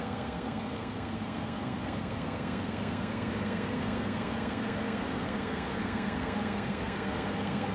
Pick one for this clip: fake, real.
fake